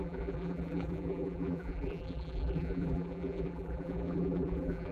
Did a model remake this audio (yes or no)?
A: yes